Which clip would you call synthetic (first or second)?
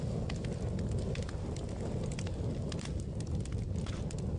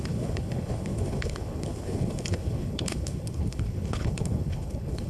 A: second